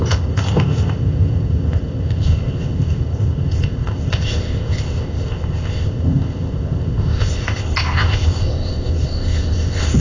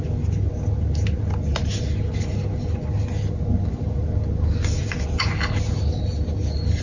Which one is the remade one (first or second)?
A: first